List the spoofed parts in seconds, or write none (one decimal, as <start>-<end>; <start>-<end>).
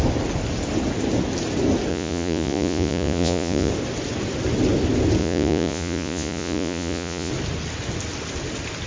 1.9-3.7; 5.2-7.3